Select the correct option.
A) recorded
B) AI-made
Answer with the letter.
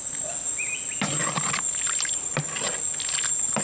A